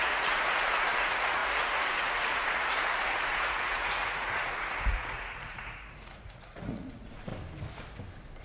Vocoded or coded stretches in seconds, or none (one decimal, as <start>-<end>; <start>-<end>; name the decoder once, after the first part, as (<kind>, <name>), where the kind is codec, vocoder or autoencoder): 0.0-7.3 (vocoder, Vocos)